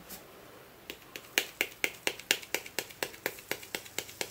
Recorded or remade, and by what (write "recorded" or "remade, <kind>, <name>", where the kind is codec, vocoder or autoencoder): recorded